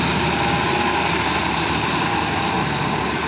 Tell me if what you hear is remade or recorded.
recorded